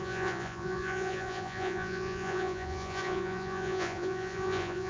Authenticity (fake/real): fake